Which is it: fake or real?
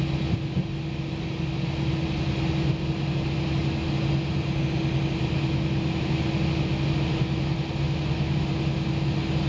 real